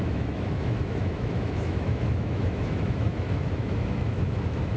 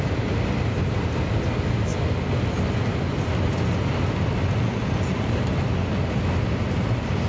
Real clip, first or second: second